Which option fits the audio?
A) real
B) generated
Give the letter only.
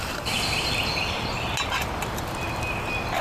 A